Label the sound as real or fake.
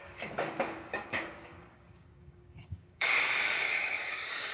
fake